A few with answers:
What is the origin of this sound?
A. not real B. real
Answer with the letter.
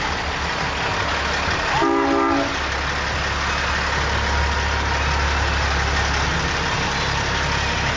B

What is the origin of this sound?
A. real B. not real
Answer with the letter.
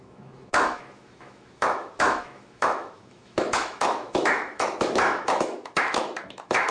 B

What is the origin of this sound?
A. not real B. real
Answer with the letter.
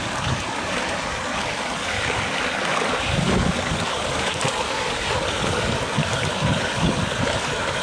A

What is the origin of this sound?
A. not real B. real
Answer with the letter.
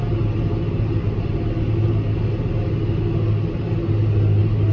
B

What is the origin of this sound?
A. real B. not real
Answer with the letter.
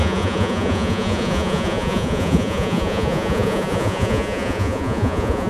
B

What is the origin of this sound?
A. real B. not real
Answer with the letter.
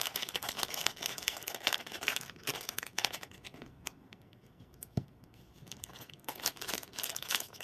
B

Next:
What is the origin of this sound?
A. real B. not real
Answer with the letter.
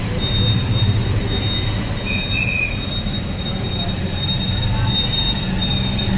A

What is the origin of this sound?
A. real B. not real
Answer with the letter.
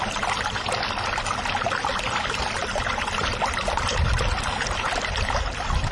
A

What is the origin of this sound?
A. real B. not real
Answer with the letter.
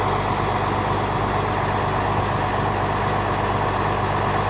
A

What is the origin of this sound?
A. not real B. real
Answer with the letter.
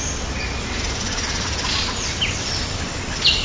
B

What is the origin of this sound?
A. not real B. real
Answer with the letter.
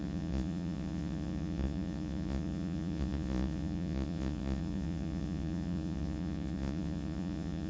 A